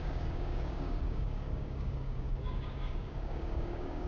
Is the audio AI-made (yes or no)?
yes